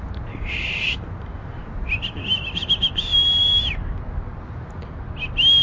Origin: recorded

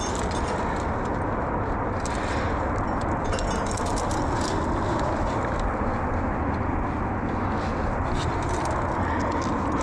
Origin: recorded